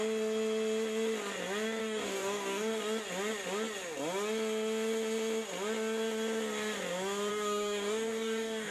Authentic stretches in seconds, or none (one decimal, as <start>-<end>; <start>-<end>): 0.0-1.8; 2.8-7.3